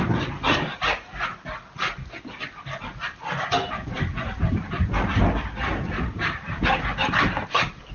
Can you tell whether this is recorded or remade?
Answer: recorded